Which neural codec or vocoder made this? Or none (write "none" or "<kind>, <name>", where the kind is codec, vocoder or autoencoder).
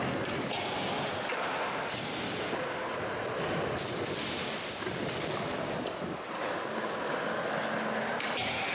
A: none